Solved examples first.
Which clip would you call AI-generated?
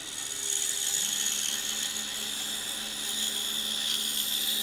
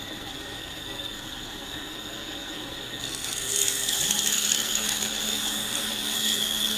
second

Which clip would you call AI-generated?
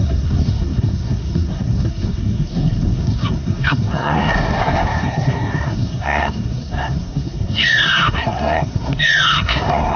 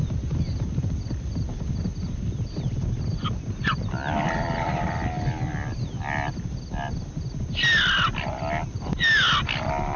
first